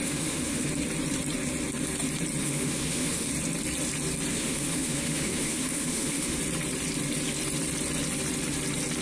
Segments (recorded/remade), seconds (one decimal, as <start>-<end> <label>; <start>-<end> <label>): 0.0-0.7 remade; 0.7-2.4 recorded; 2.4-3.3 remade; 3.3-4.3 recorded; 4.3-6.4 remade; 6.4-9.0 recorded